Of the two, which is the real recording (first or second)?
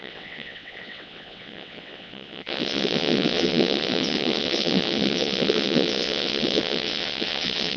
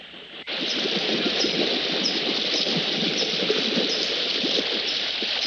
second